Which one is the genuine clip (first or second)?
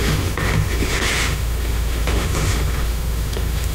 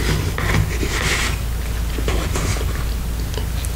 second